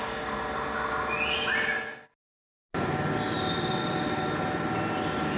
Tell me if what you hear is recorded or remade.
recorded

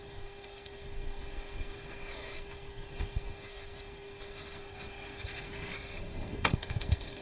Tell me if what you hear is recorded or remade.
remade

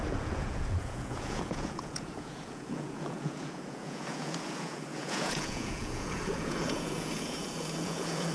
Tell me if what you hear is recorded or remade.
remade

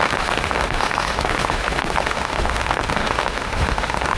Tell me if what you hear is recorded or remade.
remade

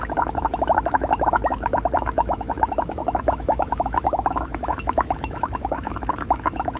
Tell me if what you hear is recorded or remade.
remade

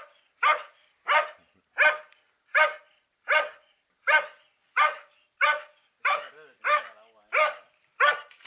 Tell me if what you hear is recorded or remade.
recorded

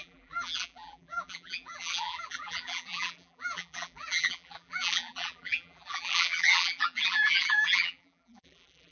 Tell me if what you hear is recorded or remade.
remade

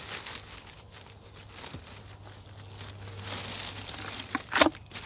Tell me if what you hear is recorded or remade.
recorded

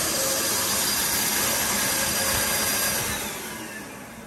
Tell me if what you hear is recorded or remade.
recorded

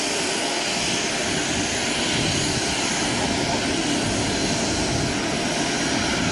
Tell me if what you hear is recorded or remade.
recorded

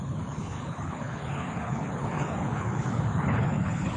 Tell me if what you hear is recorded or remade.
remade